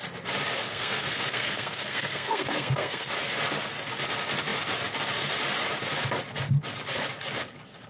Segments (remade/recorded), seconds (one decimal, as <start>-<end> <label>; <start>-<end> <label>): 0.0-0.7 recorded; 0.7-3.1 remade; 3.1-7.9 recorded